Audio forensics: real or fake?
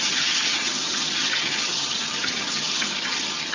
fake